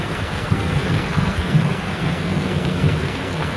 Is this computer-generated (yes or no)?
yes